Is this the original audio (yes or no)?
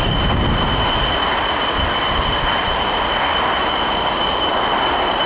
yes